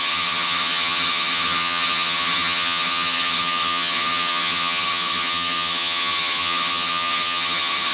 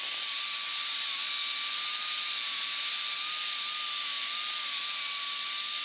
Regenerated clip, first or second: first